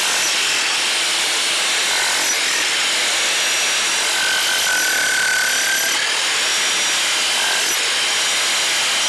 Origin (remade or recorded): recorded